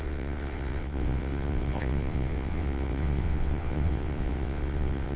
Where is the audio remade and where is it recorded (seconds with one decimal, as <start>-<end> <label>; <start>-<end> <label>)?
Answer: 0.0-5.2 remade